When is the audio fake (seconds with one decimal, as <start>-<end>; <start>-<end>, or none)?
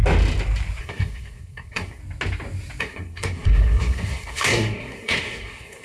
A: 0.8-2.0; 2.8-5.8